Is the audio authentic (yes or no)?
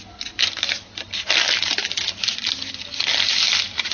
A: yes